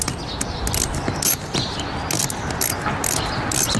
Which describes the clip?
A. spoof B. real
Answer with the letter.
B